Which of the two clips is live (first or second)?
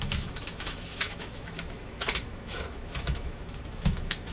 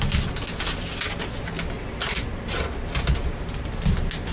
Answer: second